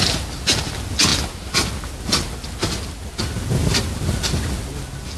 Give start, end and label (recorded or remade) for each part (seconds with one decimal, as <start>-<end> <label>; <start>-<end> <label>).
0.0-5.2 recorded